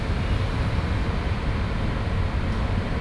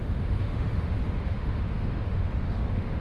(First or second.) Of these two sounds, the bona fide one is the first